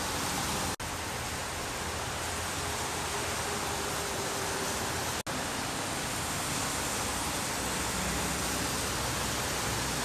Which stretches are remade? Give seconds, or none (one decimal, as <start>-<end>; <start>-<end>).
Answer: none